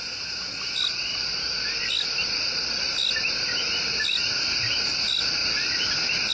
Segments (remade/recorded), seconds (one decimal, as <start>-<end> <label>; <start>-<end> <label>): 0.0-6.3 recorded